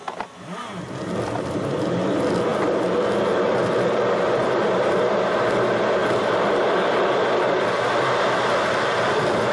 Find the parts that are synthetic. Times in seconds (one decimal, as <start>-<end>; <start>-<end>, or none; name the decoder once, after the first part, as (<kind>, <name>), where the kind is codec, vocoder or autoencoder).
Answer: none